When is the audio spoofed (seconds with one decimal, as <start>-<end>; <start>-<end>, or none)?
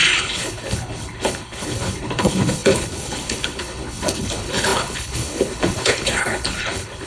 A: 0.0-7.1